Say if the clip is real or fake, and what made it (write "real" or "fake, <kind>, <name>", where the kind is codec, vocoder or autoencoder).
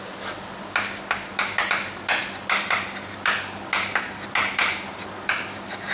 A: real